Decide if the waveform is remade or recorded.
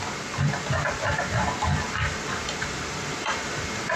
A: remade